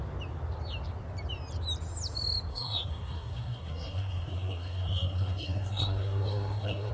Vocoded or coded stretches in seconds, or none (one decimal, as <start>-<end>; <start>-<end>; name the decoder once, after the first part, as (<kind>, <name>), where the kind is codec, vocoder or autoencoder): 2.5-6.9 (codec, SNAC)